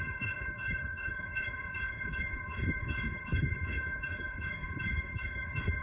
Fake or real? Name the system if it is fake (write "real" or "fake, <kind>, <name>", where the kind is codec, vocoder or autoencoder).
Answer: fake, codec, HILCodec